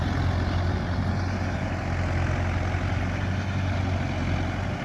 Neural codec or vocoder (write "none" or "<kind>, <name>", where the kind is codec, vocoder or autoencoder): none